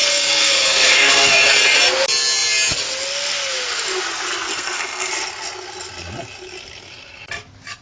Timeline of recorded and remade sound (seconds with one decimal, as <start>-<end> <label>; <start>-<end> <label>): 0.0-1.5 remade; 1.5-4.5 recorded; 4.5-5.1 remade; 5.1-7.8 recorded